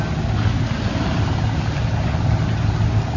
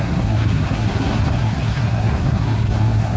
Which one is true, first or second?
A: first